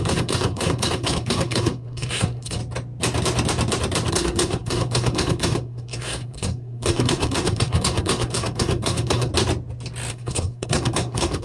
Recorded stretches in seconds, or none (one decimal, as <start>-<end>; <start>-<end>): 2.6-4.1; 9.3-10.1

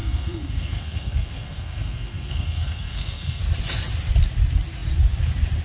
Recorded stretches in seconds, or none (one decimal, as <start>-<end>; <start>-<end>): 3.4-5.6

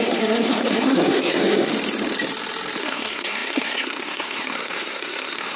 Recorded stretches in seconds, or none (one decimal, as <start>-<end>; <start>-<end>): 1.7-2.8

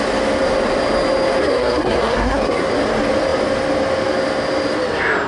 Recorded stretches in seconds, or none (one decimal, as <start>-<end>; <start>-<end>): 0.0-1.4; 2.7-5.3

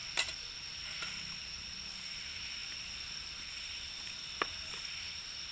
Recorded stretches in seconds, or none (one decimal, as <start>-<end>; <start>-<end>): 0.0-5.5

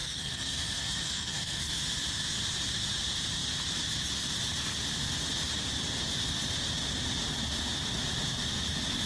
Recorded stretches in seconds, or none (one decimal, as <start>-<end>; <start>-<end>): 1.7-9.1

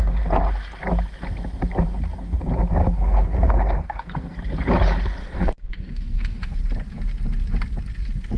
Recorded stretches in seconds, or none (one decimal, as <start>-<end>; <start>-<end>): 0.0-2.8; 4.4-5.2; 6.6-8.4